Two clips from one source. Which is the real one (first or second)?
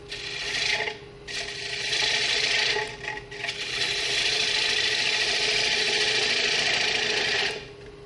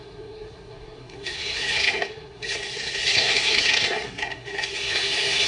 first